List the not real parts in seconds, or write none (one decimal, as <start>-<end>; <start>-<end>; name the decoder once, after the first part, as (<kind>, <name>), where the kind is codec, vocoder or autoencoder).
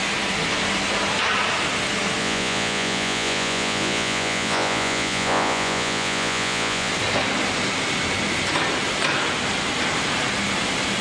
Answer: 2.2-6.9 (vocoder, Vocos)